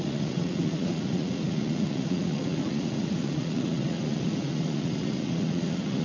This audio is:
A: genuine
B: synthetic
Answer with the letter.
B